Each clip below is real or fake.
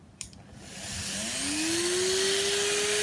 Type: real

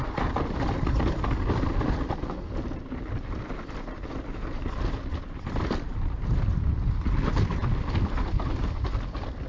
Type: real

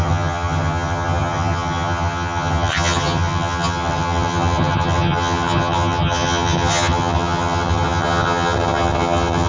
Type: fake